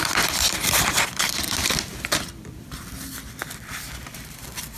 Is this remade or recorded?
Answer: remade